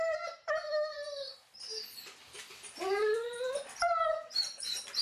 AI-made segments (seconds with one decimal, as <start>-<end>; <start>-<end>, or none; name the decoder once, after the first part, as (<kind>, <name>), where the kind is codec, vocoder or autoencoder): none